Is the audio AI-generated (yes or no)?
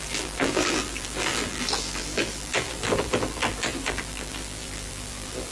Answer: yes